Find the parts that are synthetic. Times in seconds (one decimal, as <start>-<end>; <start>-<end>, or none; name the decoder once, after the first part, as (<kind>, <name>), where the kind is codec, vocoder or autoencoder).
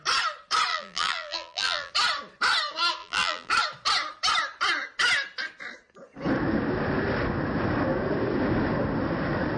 0.7-1.9 (vocoder, BigVGAN v2); 3.0-3.5